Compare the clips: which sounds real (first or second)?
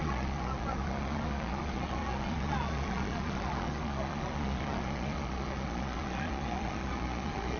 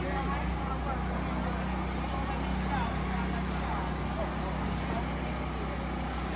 second